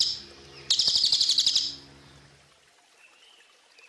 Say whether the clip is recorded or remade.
recorded